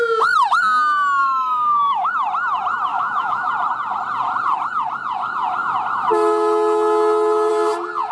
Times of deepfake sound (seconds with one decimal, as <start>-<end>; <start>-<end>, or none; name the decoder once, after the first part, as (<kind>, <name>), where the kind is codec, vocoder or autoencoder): 1.2-2.1 (autoencoder, DAC-VAE); 2.9-3.5